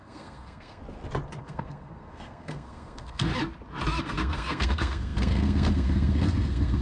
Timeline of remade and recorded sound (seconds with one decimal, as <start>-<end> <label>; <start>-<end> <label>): 0.0-0.8 remade; 0.8-1.4 recorded; 1.4-3.3 remade; 3.3-4.0 recorded; 4.0-6.8 remade